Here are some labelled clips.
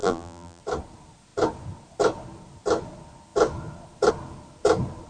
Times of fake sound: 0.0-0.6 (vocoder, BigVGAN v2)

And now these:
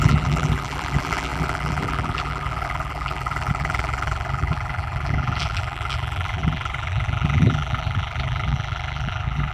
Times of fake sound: 0.0-9.5 (vocoder, BigVGAN v2)

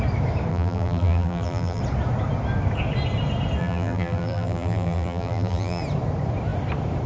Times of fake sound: 0.5-1.8 (vocoder, BigVGAN v2); 3.6-5.8